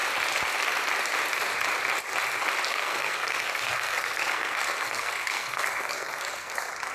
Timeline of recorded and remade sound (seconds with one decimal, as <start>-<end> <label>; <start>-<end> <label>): 0.0-2.7 recorded; 2.7-6.9 remade